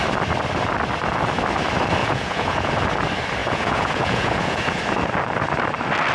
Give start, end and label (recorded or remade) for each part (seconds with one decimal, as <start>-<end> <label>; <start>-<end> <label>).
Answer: 0.0-2.0 recorded; 2.0-2.7 remade; 2.7-3.4 recorded; 3.4-4.8 remade; 4.8-6.1 recorded